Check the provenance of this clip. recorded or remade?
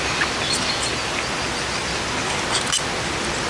recorded